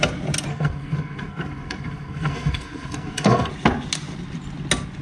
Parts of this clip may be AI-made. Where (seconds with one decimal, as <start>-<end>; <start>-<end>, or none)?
0.5-3.5